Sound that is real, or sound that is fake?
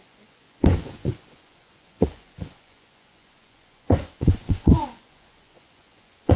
fake